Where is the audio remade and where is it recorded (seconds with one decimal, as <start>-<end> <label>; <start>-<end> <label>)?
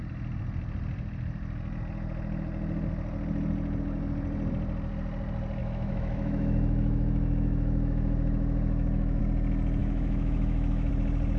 0.0-5.6 recorded; 5.6-9.2 remade; 9.2-9.8 recorded; 9.8-10.9 remade; 10.9-11.4 recorded